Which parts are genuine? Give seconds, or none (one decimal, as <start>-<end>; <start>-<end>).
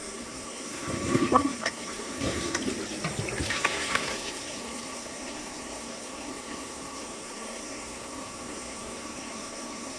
2.6-3.5